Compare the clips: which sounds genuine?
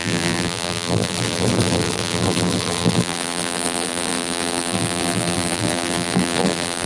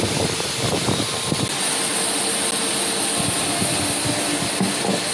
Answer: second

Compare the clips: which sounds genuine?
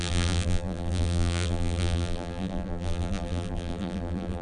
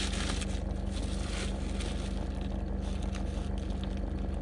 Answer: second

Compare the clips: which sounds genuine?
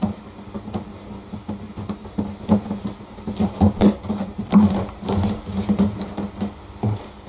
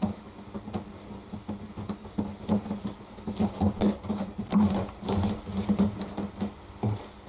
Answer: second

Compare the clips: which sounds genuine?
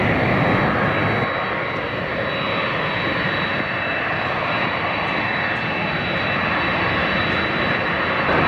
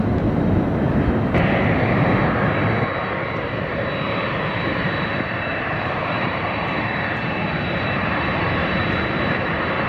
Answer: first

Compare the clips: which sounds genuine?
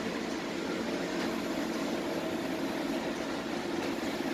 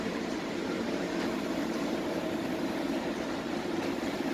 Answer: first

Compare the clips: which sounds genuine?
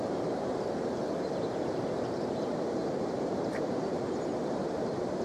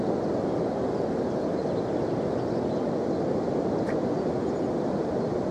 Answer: second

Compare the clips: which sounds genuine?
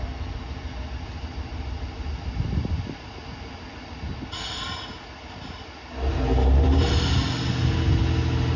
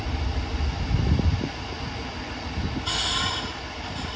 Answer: first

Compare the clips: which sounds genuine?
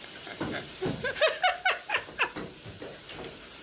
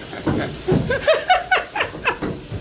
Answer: second